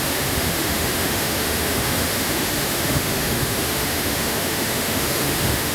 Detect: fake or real fake